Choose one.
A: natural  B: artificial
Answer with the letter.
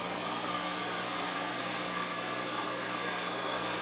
B